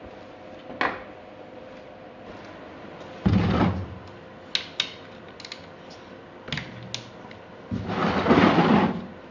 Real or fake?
real